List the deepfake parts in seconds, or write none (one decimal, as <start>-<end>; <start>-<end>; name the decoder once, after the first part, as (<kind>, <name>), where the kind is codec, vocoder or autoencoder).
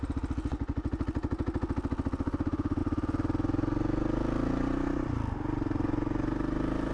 none